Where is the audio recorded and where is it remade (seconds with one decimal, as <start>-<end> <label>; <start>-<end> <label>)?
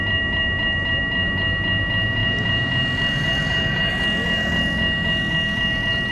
0.0-2.2 recorded; 2.2-3.9 remade; 3.9-6.1 recorded